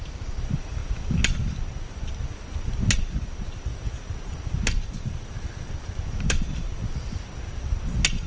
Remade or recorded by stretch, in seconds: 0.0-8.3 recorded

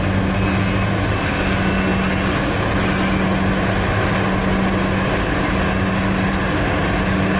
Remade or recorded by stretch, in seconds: 0.0-7.4 recorded

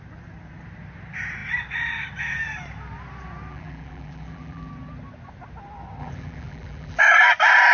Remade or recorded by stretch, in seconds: 0.0-3.5 recorded; 3.5-4.7 remade; 4.7-6.0 recorded; 6.0-7.0 remade; 7.0-7.7 recorded

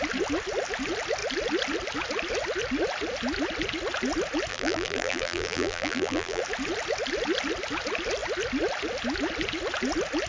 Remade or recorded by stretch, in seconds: 0.0-4.5 recorded; 4.5-6.4 remade; 6.4-10.3 recorded

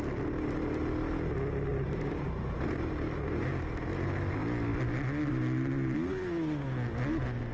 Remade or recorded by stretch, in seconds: 0.0-1.7 recorded; 1.7-3.5 remade; 3.5-7.5 recorded

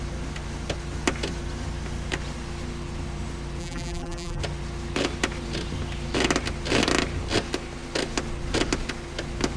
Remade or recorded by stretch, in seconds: 0.0-3.6 recorded; 3.6-4.4 remade; 4.4-9.6 recorded

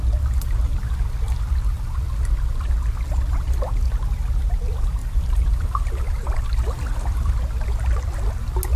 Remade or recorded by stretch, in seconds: 0.0-5.0 recorded; 5.0-7.3 remade; 7.3-8.8 recorded